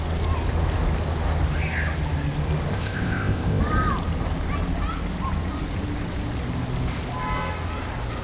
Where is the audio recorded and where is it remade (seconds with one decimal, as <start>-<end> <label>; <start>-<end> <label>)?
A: 0.0-2.7 recorded; 2.7-3.6 remade; 3.6-8.2 recorded